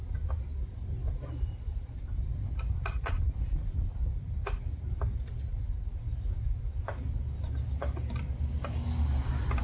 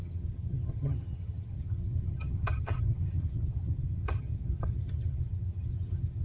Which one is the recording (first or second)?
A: first